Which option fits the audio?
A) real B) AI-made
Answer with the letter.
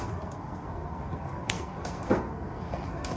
B